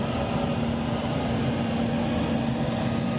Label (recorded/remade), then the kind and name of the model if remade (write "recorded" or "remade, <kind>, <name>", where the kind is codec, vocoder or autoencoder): recorded